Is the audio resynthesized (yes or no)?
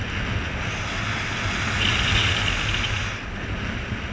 no